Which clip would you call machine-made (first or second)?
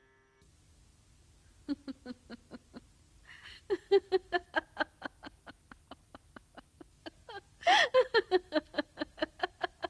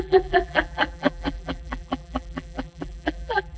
second